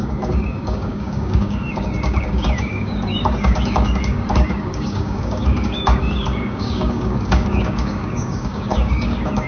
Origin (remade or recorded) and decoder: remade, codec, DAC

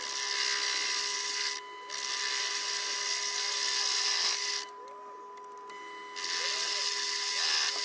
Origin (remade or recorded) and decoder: recorded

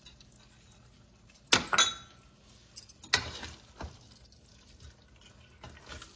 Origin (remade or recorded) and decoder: recorded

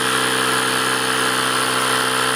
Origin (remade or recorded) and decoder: recorded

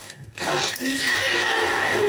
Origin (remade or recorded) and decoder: remade, codec, DAC